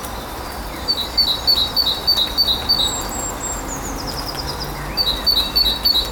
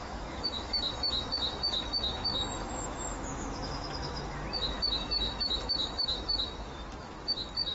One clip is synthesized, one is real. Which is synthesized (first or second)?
second